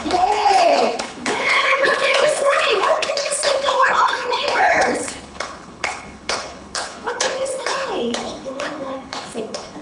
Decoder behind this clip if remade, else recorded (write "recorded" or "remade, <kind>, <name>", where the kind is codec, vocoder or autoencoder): remade, codec, HILCodec